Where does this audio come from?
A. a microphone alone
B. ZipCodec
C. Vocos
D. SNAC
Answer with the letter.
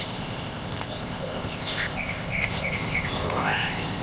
B